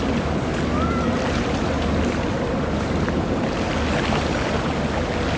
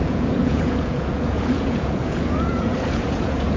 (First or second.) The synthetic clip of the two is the second